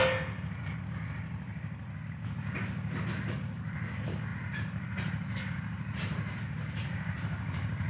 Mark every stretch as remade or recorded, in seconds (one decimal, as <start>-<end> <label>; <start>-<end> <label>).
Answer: 0.0-4.3 recorded; 4.3-7.9 remade